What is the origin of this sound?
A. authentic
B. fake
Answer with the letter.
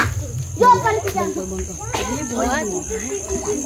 A